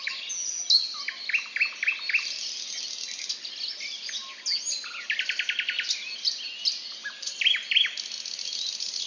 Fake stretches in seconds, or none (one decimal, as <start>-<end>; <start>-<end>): none